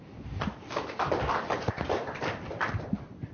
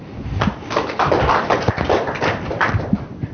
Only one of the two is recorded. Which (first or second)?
second